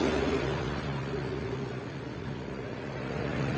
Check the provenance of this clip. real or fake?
fake